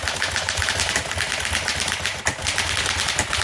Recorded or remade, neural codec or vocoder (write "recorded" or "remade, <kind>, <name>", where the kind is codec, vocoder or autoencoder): recorded